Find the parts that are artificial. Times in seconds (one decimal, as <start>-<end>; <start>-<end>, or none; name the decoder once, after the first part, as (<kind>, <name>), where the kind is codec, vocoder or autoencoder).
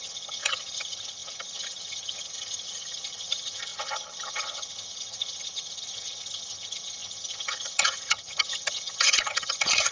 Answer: 0.0-9.9 (vocoder, HiFi-GAN)